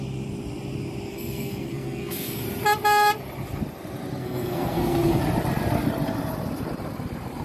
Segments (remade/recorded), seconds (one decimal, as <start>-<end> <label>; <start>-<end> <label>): 0.0-1.1 recorded; 1.1-2.4 remade; 2.4-4.2 recorded; 4.2-5.2 remade; 5.2-7.4 recorded